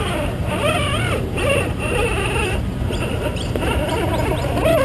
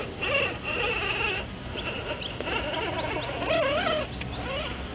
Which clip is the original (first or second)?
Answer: second